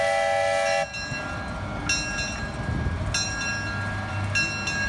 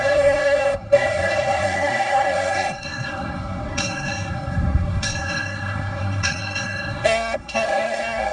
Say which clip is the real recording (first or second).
first